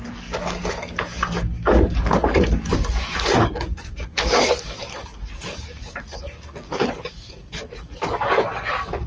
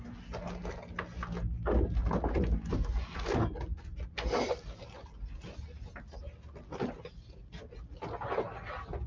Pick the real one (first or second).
second